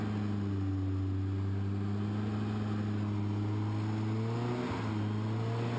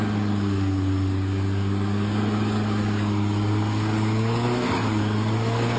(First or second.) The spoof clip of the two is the second